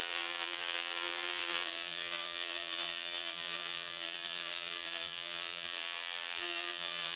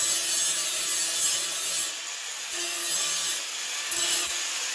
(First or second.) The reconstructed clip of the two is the first